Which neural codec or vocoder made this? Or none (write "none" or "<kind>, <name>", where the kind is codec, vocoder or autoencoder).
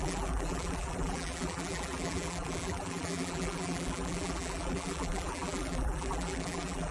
vocoder, BigVGAN v2